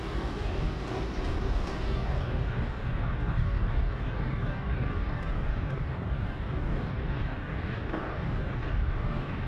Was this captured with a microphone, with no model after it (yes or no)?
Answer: no